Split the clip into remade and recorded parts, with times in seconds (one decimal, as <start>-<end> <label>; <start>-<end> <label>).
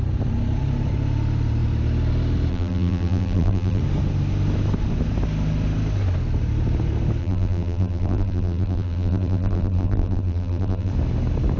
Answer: 0.0-2.5 recorded; 2.5-3.8 remade; 3.8-7.2 recorded; 7.2-10.9 remade; 10.9-11.6 recorded